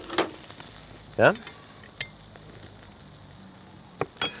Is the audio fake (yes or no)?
no